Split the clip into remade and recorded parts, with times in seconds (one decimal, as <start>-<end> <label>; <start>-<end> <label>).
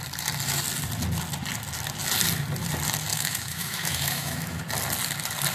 0.0-3.1 recorded; 3.1-4.6 remade; 4.6-5.5 recorded